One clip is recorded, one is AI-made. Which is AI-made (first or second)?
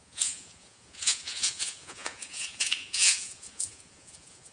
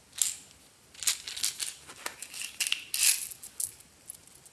first